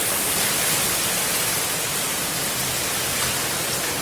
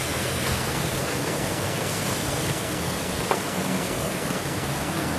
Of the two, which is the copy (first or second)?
second